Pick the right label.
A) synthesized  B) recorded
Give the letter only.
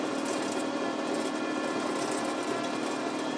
B